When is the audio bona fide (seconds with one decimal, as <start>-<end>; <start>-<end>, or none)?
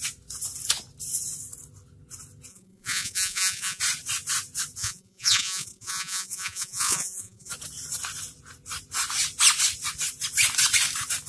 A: 0.0-2.5; 3.8-4.8; 7.5-11.3